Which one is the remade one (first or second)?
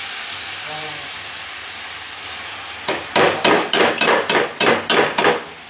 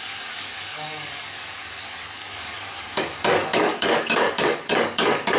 second